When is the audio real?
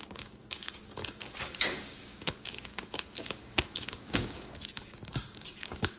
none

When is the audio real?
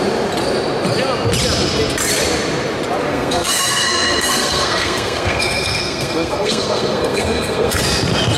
0.0-3.1; 7.8-8.4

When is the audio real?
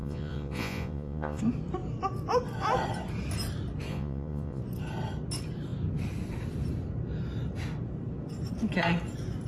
1.4-3.9; 4.6-9.5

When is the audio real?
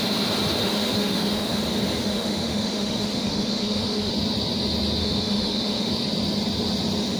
0.0-0.6; 1.6-2.0; 4.1-5.0; 5.9-7.2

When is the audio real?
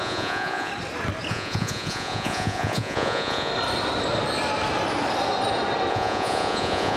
0.7-1.3; 3.5-5.9